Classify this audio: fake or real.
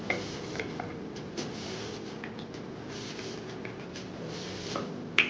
real